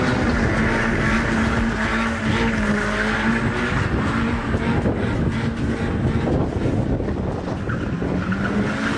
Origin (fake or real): real